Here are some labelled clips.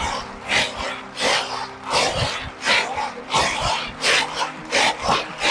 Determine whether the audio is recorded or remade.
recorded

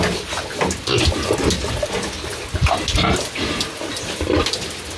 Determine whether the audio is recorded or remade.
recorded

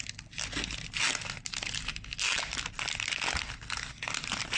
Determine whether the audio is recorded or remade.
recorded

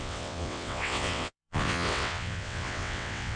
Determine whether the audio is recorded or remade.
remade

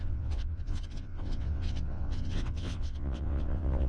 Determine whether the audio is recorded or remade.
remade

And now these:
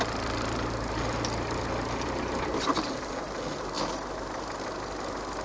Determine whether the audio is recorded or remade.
recorded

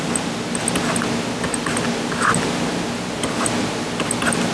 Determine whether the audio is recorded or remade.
recorded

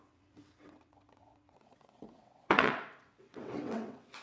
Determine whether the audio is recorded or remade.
remade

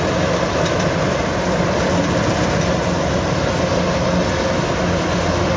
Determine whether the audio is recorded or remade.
recorded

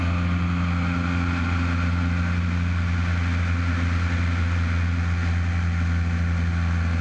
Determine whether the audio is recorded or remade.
recorded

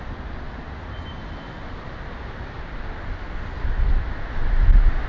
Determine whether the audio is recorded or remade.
recorded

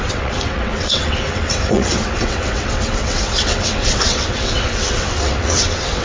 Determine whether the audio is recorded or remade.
remade